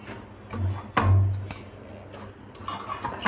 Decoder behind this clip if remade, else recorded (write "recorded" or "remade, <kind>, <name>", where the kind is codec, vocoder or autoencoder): recorded